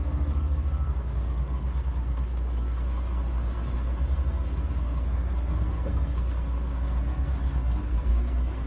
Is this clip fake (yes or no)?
yes